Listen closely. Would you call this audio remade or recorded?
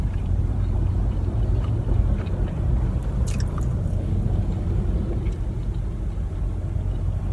recorded